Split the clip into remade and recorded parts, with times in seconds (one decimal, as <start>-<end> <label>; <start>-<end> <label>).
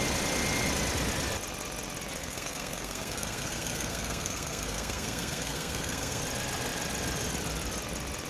0.0-2.2 recorded; 2.2-6.2 remade; 6.2-8.3 recorded